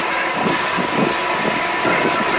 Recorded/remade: recorded